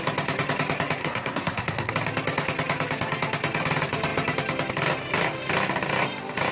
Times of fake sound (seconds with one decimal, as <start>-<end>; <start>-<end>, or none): 1.0-1.9

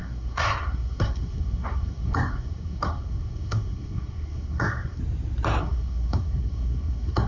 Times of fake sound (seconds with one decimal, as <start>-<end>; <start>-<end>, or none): 0.0-5.0; 5.6-7.3

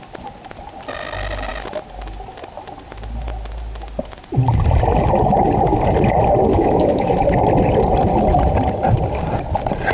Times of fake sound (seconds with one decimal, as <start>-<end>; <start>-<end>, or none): 6.5-7.1

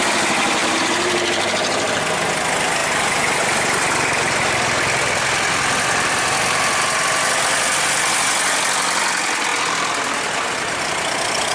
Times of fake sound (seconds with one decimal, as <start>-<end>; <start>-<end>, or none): 0.6-2.0; 9.5-10.5

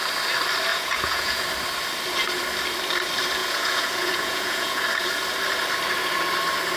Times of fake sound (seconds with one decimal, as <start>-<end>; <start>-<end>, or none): 0.7-1.4; 3.4-4.8

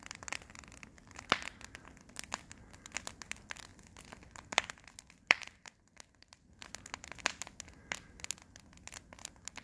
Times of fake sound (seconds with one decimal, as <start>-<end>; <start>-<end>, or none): 3.7-6.9

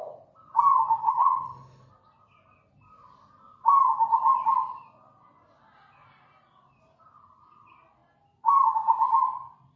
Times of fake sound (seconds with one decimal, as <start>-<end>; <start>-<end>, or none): 1.0-1.9